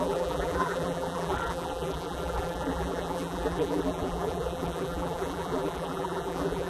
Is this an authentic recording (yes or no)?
no